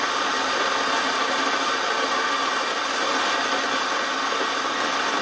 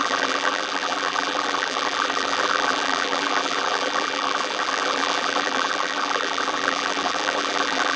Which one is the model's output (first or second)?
second